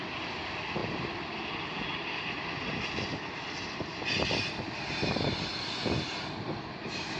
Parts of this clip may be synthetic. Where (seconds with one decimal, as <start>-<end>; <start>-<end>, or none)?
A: none